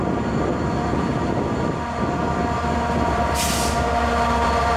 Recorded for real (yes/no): yes